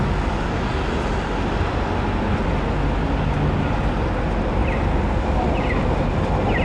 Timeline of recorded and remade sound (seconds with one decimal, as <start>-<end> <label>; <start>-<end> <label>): 0.0-6.6 recorded